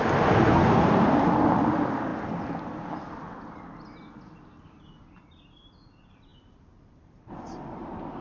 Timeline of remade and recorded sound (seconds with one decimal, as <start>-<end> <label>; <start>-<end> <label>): 0.0-8.2 recorded